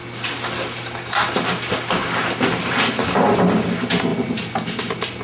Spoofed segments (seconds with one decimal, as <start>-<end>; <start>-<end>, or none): none